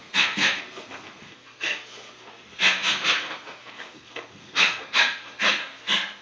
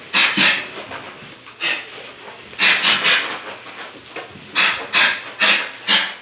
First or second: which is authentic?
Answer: second